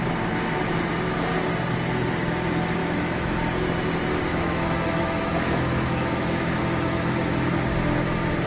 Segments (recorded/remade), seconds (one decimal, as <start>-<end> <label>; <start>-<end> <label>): 0.0-2.8 recorded; 2.8-3.3 remade; 3.3-4.3 recorded; 4.3-7.5 remade; 7.5-8.5 recorded